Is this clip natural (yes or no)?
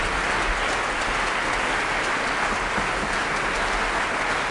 yes